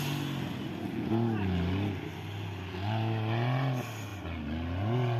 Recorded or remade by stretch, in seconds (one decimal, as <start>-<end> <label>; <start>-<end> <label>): 0.0-5.2 recorded